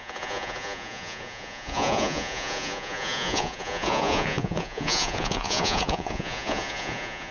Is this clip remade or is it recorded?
remade